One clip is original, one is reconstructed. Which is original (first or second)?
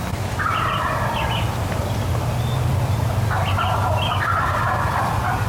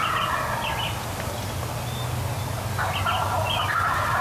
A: second